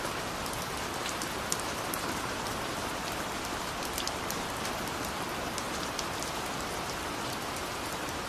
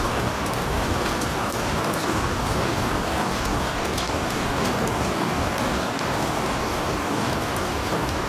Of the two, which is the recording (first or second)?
first